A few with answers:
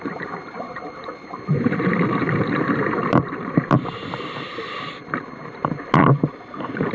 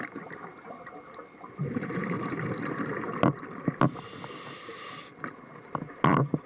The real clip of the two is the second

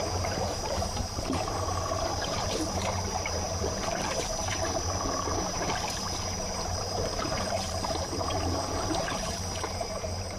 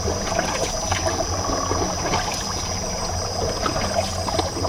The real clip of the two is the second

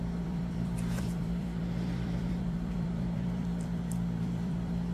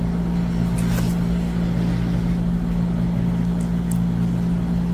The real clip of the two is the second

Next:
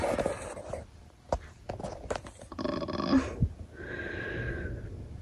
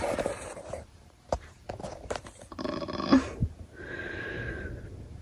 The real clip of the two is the first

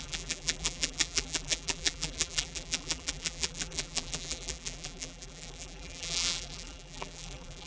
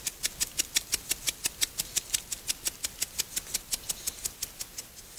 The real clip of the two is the second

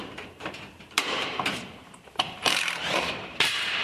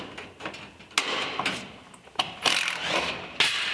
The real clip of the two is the second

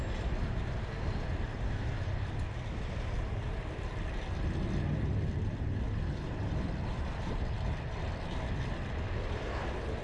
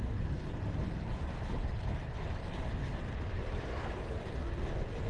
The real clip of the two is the first